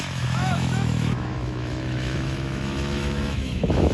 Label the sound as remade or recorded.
remade